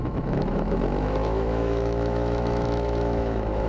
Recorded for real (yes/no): no